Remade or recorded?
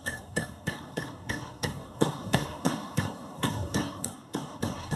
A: remade